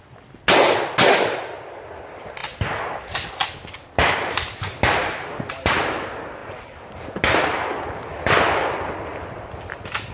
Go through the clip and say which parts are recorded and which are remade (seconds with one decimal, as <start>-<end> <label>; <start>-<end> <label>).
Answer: 0.0-10.1 recorded

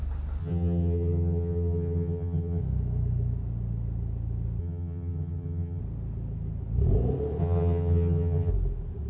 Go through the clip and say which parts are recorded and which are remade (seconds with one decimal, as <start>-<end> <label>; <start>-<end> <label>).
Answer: 0.0-0.4 recorded; 0.4-2.6 remade; 2.6-4.6 recorded; 4.6-5.8 remade; 5.8-7.4 recorded; 7.4-8.5 remade; 8.5-9.1 recorded

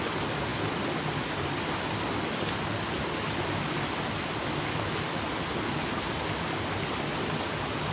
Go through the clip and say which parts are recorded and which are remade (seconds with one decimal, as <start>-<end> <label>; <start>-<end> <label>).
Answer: 0.0-7.9 recorded

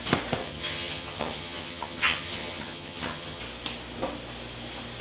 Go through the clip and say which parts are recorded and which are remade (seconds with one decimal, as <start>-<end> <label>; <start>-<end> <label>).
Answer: 0.0-0.4 recorded; 0.4-3.4 remade; 3.4-5.0 recorded

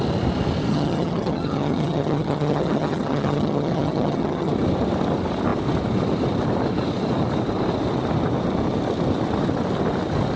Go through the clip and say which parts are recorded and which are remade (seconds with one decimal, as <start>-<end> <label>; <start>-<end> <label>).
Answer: 0.0-0.7 recorded; 0.7-4.5 remade; 4.5-10.4 recorded

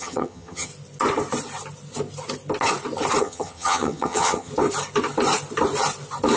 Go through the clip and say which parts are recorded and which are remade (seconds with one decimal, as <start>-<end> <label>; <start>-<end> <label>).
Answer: 0.0-0.7 remade; 0.7-3.2 recorded; 3.2-4.5 remade; 4.5-6.4 recorded